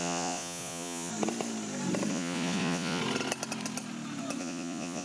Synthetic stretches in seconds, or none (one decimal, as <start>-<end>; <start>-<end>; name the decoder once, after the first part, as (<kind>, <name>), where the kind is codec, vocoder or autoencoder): 0.0-1.1 (vocoder, Vocos); 2.1-3.0; 4.4-5.0